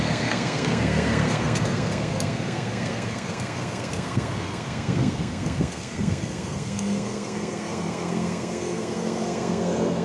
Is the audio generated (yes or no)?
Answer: yes